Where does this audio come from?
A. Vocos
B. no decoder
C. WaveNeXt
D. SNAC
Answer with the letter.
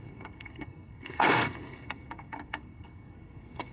D